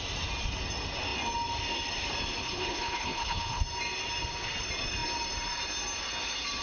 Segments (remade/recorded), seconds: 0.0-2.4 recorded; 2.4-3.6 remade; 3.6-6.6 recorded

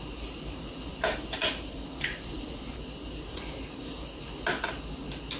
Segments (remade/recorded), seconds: 0.0-5.4 recorded

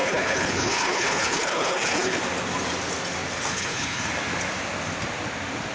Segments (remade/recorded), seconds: 0.0-2.2 remade; 2.2-3.5 recorded; 3.5-4.1 remade; 4.1-5.7 recorded

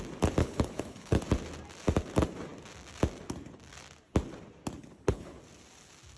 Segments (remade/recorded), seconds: 0.0-0.4 recorded; 0.4-1.2 remade; 1.2-4.8 recorded; 4.8-5.4 remade; 5.4-6.2 recorded

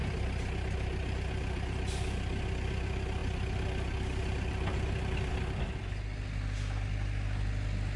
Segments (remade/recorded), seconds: 0.0-8.0 recorded